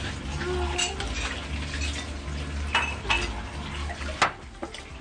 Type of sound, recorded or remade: recorded